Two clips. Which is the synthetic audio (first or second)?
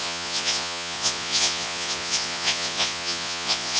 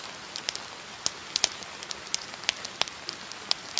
first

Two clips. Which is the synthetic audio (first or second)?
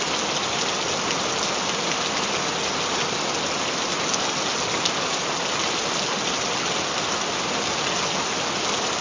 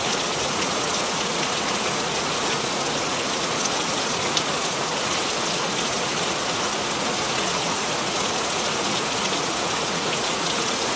second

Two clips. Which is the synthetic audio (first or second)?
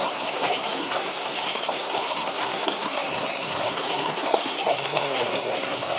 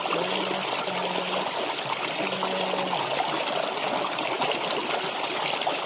first